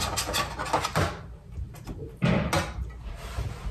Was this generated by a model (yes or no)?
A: no